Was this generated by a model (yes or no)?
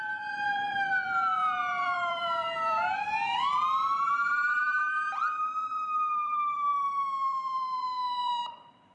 yes